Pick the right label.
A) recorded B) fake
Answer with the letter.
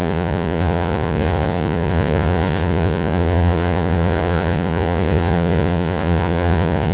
B